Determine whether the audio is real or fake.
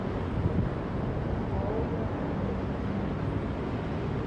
real